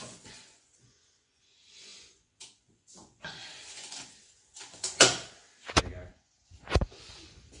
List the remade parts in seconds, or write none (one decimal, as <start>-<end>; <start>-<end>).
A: 0.0-5.4; 6.1-7.6